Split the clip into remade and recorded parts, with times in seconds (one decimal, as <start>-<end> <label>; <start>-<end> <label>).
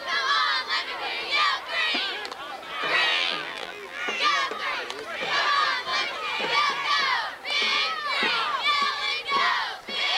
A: 0.0-3.1 recorded; 3.1-4.0 remade; 4.0-10.2 recorded